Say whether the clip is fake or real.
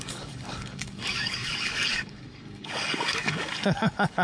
fake